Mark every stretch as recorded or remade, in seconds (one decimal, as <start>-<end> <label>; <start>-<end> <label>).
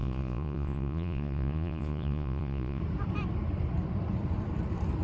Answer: 0.0-2.8 remade; 2.8-5.0 recorded